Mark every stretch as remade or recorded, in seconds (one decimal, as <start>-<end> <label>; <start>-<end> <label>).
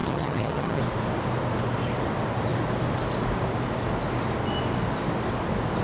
0.0-0.8 remade; 0.8-5.8 recorded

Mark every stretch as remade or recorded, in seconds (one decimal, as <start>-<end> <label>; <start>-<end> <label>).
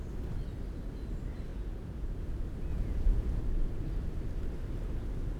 0.0-1.5 recorded; 1.5-2.2 remade; 2.2-2.7 recorded; 2.7-3.4 remade; 3.4-5.4 recorded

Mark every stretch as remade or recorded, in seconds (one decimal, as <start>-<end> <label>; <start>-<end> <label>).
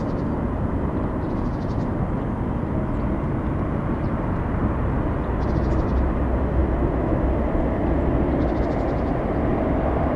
0.0-10.2 recorded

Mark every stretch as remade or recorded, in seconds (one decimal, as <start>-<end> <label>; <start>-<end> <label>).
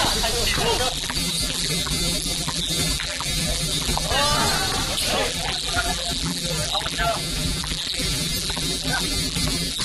0.0-0.9 recorded; 0.9-4.1 remade; 4.1-5.3 recorded; 5.3-9.8 remade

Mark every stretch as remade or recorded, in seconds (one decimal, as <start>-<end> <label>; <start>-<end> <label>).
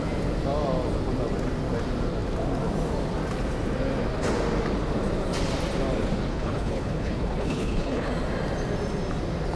0.0-6.3 recorded; 6.3-8.1 remade; 8.1-9.6 recorded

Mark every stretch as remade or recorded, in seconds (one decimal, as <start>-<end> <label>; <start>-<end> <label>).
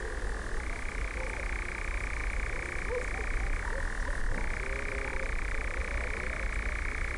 0.0-5.1 recorded; 5.1-5.8 remade; 5.8-7.2 recorded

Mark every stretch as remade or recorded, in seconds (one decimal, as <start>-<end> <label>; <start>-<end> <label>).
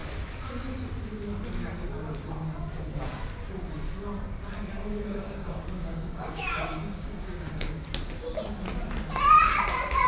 0.0-4.8 recorded; 4.8-7.7 remade; 7.7-10.1 recorded